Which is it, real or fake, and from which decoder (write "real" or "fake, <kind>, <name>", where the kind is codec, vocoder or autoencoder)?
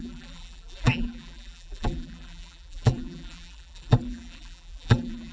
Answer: fake, vocoder, BigVGAN v2